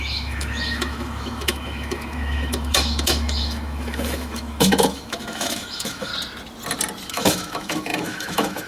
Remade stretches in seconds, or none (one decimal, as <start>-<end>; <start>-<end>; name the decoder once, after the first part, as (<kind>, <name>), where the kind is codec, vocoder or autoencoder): 0.0-6.1 (autoencoder, DAC-VAE); 7.1-8.7